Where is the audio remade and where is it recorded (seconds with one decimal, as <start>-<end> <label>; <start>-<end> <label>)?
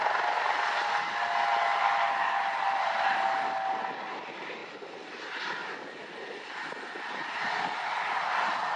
0.0-8.8 recorded